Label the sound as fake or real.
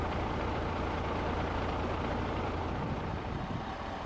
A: real